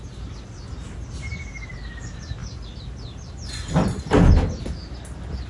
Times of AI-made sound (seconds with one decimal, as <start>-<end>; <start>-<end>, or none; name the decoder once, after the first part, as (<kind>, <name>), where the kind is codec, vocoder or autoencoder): none

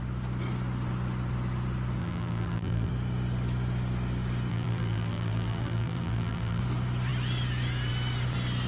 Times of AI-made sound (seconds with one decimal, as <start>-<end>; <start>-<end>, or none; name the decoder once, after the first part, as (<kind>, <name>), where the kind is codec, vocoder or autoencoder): 2.0-2.9 (vocoder, BigVGAN v2); 4.5-6.6

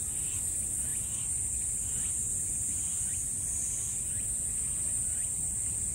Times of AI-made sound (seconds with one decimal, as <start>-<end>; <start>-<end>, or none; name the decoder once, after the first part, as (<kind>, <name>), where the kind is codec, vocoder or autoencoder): none

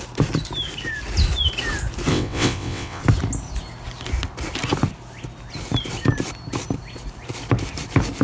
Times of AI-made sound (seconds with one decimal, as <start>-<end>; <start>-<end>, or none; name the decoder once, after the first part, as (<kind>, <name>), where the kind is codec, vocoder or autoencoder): 2.1-3.0 (vocoder, WaveNeXt)

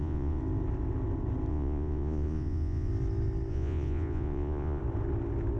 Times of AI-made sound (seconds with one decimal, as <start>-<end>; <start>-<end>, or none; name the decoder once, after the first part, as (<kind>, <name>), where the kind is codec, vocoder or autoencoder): 0.0-0.4 (vocoder, Vocos); 1.5-2.9; 3.5-4.8

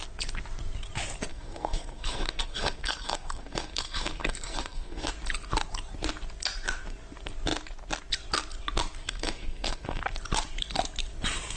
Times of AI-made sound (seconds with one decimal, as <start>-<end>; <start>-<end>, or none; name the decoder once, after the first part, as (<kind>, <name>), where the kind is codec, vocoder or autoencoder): 1.3-5.1 (codec, SNAC); 9.0-10.0